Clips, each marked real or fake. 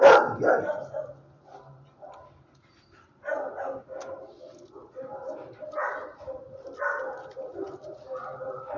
fake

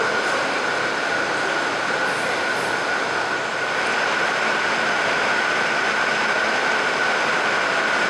real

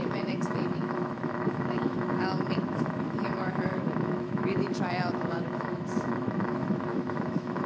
fake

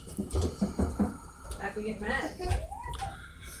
fake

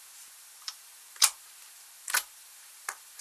fake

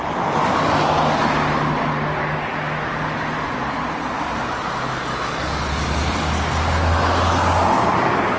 real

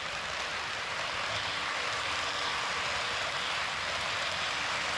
real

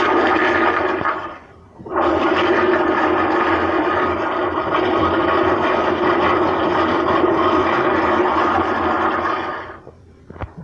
fake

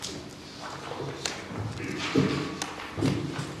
real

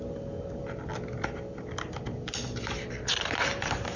real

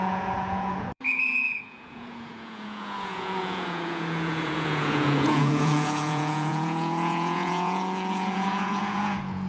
fake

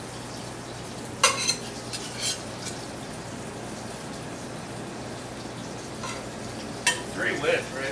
real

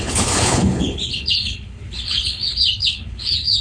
fake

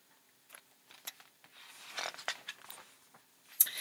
fake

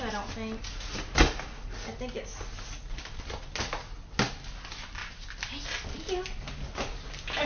real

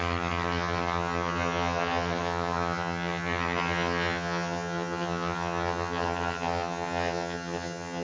fake